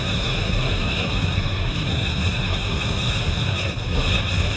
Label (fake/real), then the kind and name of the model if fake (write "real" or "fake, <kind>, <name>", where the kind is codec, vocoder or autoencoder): fake, codec, SNAC